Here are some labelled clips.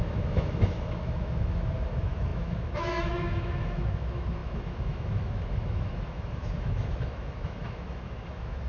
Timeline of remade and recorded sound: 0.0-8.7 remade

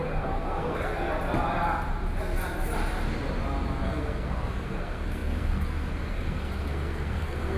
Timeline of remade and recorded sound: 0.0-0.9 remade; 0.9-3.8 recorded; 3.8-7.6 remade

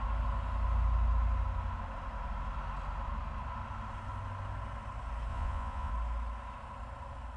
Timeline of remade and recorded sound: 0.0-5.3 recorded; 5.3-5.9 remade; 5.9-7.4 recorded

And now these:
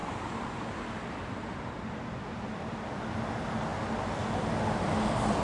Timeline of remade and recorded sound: 0.0-3.2 remade; 3.2-5.4 recorded

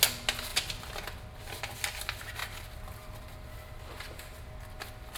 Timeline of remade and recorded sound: 0.0-5.2 recorded